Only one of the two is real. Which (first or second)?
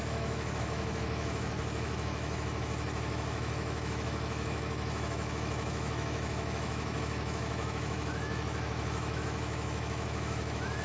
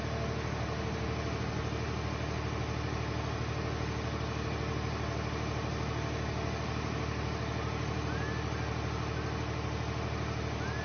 second